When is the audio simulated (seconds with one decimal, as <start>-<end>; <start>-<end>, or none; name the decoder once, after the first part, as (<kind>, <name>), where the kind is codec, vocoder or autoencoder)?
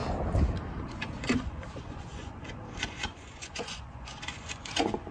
0.8-5.1 (vocoder, Vocos)